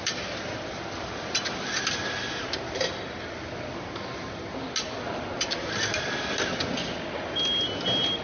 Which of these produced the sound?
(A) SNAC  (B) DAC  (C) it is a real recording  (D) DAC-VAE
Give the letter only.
C